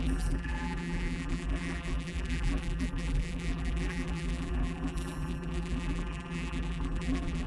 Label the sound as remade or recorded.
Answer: remade